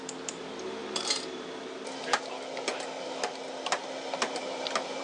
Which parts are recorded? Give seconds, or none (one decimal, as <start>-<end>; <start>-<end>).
2.7-3.8